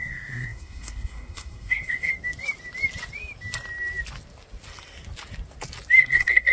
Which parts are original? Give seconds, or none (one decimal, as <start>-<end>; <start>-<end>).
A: 2.1-6.0